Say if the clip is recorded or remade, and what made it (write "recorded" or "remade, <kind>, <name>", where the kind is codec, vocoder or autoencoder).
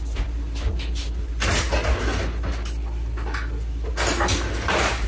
recorded